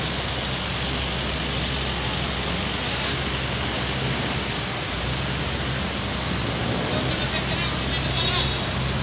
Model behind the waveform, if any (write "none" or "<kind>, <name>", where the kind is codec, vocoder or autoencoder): none